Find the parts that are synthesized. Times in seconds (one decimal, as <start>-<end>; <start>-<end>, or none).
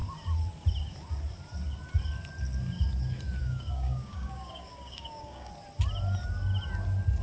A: 3.4-5.5